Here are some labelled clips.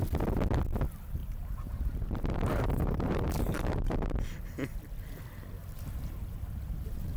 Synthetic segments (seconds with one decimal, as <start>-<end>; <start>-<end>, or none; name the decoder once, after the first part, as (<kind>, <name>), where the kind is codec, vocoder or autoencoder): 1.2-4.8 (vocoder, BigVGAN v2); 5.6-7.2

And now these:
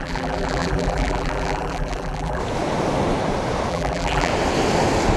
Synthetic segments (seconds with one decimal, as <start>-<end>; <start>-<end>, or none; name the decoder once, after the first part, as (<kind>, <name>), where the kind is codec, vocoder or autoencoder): 0.0-2.4 (vocoder, BigVGAN v2); 3.7-4.3

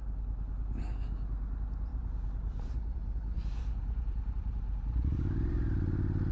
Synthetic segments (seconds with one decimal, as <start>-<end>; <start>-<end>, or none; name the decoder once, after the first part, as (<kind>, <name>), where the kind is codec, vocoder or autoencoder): 1.9-5.5 (vocoder, BigVGAN v2)